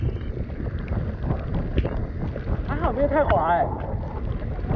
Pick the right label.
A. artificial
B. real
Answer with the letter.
B